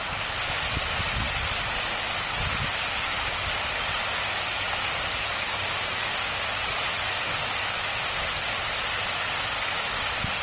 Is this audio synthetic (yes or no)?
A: no